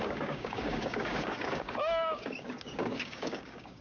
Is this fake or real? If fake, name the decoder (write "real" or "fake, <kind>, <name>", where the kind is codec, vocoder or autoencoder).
fake, codec, DAC